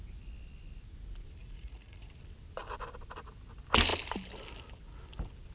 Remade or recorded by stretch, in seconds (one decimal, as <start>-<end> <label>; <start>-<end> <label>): 0.0-1.4 recorded; 1.4-2.1 remade; 2.1-5.5 recorded